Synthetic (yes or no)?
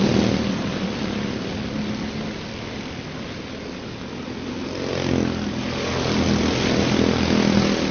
no